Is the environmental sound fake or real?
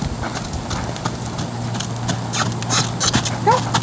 real